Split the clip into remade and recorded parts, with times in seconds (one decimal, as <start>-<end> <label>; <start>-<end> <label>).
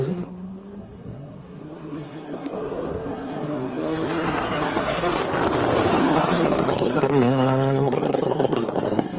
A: 0.0-5.2 remade; 5.2-6.0 recorded; 6.0-9.2 remade